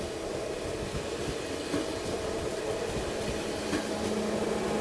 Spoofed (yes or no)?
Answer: no